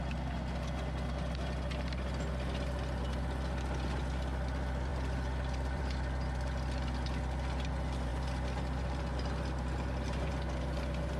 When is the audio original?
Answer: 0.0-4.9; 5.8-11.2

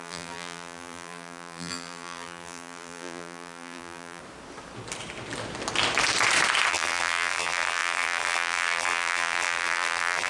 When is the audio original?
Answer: 4.2-6.7

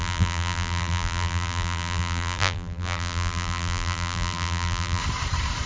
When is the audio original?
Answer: 5.0-5.7

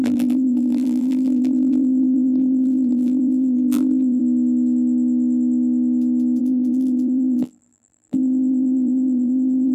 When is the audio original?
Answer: 4.2-6.4

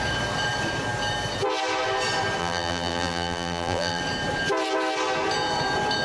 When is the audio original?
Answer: 0.0-2.4; 4.0-6.0

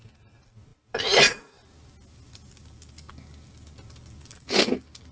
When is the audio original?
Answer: 0.0-5.1